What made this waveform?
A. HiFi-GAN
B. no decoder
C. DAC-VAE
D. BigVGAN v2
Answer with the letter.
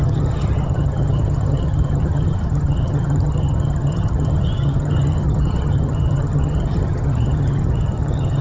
A